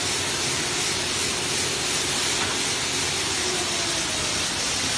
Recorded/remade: recorded